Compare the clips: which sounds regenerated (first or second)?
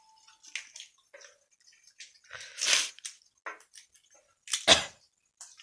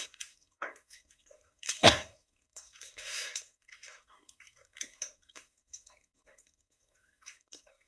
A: second